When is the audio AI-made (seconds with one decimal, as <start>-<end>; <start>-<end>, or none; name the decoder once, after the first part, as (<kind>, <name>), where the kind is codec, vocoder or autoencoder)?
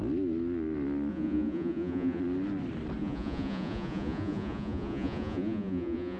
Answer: 1.1-2.2 (vocoder, Vocos); 3.0-6.2